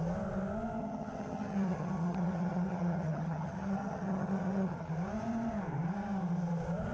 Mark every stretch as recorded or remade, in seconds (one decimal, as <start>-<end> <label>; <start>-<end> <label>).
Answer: 0.0-0.8 recorded; 0.8-4.9 remade; 4.9-6.9 recorded